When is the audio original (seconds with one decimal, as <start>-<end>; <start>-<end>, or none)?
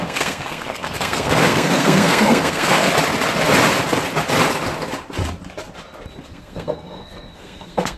2.9-6.2